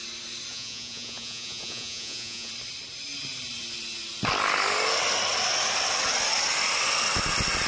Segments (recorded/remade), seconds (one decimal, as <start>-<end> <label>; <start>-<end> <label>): 0.0-0.5 recorded; 0.5-2.5 remade; 2.5-7.7 recorded